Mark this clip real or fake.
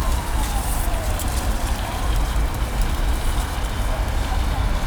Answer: fake